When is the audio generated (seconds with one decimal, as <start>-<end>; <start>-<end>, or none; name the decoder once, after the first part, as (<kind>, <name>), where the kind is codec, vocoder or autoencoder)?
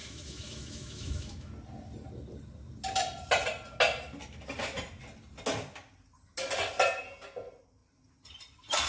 0.0-1.5 (autoencoder, DAC-VAE)